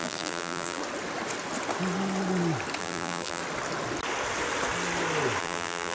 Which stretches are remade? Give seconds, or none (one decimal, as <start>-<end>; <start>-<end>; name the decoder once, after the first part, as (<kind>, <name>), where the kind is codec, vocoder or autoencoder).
0.0-0.8 (vocoder, BigVGAN v2); 2.8-3.4; 5.4-5.9